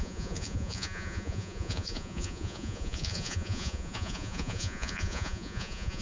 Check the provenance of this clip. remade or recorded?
remade